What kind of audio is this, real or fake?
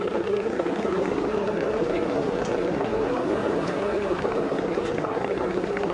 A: fake